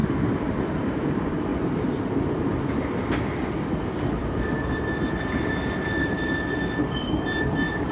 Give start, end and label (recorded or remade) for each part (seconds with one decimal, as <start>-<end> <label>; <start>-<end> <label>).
0.0-7.9 recorded